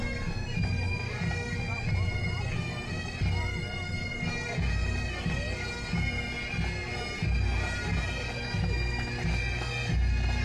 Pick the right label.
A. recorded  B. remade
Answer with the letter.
A